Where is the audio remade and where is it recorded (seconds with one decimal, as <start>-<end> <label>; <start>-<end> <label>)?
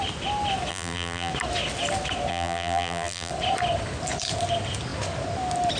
0.0-0.7 recorded; 0.7-1.3 remade; 1.3-2.3 recorded; 2.3-3.3 remade; 3.3-5.8 recorded